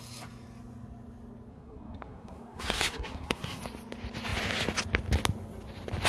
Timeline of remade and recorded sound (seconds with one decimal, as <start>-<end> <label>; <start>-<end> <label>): 0.0-1.5 recorded; 1.5-3.6 remade; 3.6-6.1 recorded